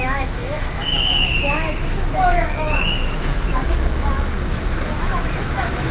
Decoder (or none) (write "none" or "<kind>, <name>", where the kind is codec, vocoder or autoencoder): autoencoder, DAC-VAE